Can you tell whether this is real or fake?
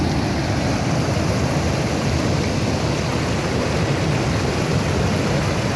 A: real